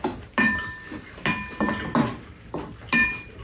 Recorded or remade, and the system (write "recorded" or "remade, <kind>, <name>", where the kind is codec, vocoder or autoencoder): recorded